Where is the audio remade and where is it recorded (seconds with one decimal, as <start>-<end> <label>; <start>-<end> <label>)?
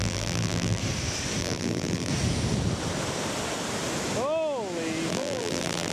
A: 0.0-0.8 remade; 0.8-1.4 recorded; 1.4-2.1 remade; 2.1-5.1 recorded; 5.1-5.9 remade